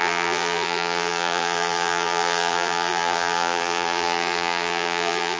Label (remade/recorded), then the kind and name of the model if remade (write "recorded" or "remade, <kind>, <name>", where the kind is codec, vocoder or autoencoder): remade, vocoder, BigVGAN v2